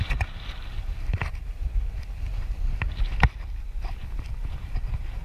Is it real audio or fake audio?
fake